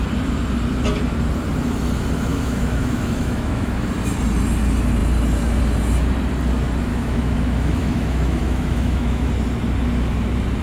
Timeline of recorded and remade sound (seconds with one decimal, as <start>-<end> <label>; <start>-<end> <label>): 0.0-2.3 recorded; 2.3-3.9 remade; 3.9-6.9 recorded; 6.9-9.3 remade; 9.3-10.6 recorded